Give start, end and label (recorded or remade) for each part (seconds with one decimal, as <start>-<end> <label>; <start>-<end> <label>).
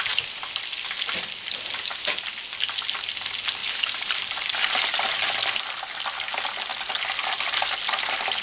0.0-3.6 recorded; 3.6-5.3 remade; 5.3-8.4 recorded